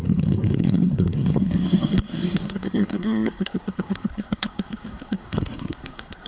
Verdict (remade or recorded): remade